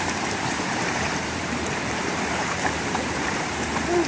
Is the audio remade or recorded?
remade